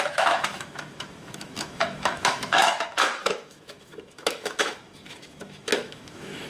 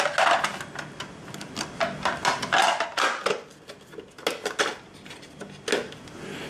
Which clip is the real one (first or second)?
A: second